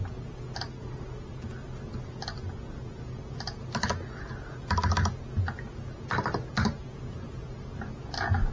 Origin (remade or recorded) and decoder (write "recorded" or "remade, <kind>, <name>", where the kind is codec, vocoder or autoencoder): recorded